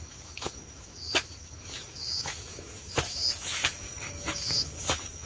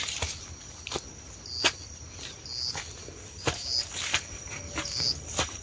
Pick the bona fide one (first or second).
second